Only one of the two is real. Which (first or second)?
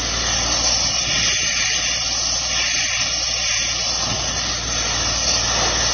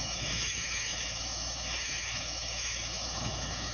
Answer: first